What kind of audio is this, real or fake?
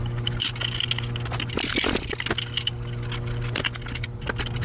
real